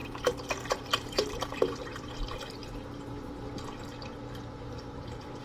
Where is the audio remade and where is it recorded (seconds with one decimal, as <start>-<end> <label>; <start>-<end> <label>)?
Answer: 0.0-0.7 recorded; 0.7-2.6 remade; 2.6-4.7 recorded; 4.7-5.4 remade